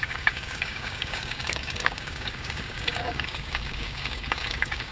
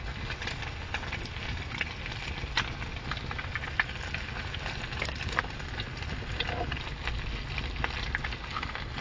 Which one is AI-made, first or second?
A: first